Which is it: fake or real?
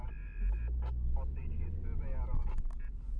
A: real